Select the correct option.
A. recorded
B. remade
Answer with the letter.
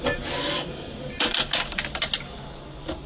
A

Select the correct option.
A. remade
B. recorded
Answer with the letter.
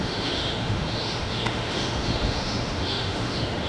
A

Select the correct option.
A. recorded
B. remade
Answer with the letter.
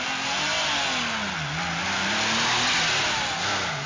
A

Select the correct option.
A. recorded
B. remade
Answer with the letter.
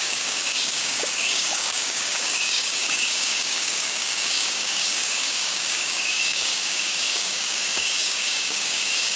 B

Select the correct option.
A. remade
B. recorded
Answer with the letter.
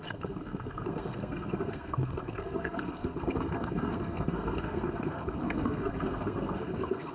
A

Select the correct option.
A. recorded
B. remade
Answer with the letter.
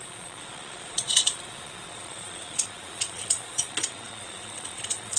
B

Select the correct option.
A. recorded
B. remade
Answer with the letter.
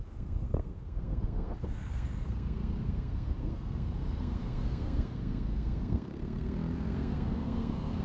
B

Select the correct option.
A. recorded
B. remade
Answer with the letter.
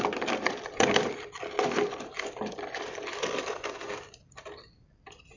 B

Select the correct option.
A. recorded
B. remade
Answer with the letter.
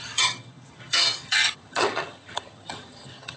B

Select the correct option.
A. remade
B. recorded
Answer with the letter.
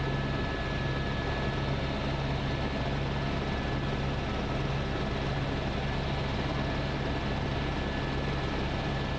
B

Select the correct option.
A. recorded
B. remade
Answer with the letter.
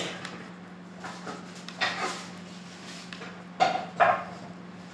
A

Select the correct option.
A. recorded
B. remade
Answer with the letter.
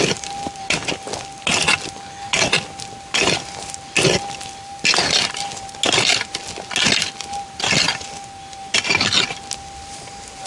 A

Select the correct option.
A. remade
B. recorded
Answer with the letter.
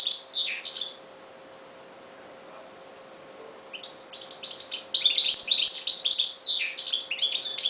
B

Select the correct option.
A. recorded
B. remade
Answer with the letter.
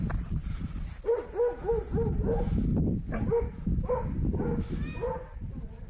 A